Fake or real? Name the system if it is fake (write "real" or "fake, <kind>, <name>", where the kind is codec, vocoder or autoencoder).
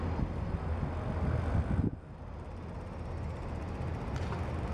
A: real